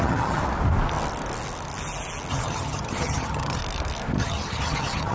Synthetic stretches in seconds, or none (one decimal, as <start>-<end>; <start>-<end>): 0.0-0.4; 2.3-3.6; 4.2-5.1